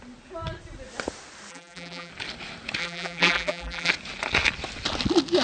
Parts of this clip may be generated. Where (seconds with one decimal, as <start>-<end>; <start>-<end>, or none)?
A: 1.5-2.1; 2.8-3.9